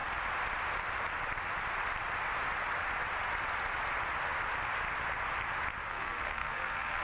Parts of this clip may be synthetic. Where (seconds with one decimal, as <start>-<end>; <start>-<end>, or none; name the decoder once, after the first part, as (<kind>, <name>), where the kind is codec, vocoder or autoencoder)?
5.9-7.0 (codec, SNAC)